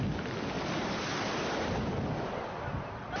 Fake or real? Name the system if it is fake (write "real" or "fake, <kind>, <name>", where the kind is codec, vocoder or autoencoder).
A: real